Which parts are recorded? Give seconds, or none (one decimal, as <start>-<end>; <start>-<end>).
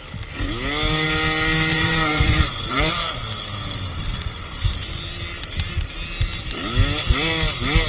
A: 0.0-1.7; 3.2-4.1; 5.0-7.9